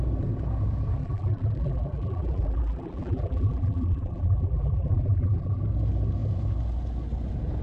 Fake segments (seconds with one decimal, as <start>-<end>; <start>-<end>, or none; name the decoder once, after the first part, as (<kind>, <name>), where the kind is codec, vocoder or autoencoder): 1.0-5.6 (vocoder, BigVGAN v2)